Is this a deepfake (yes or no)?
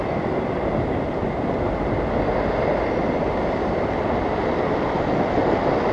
no